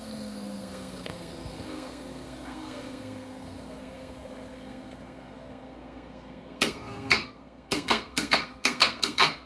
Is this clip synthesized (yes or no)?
yes